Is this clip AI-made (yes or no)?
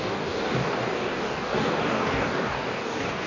yes